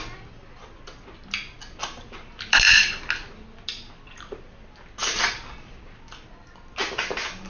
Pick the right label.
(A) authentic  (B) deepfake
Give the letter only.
A